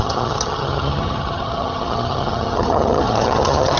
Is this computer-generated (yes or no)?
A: yes